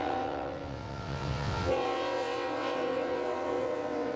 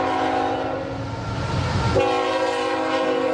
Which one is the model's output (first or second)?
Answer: first